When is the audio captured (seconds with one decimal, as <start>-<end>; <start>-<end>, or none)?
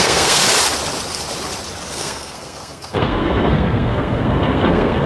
0.4-1.9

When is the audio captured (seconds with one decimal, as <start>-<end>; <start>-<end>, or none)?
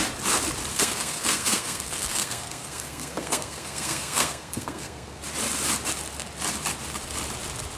0.0-0.7; 5.2-7.8